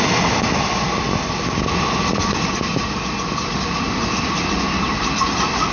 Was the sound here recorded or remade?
recorded